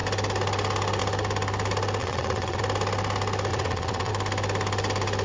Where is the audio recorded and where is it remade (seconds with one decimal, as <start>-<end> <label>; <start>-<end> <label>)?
0.0-2.0 recorded; 2.0-2.6 remade; 2.6-3.5 recorded; 3.5-4.1 remade; 4.1-5.2 recorded